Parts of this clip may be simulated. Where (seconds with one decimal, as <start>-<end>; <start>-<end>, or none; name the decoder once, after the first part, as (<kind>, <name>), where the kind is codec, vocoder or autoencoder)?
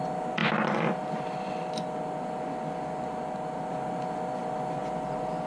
none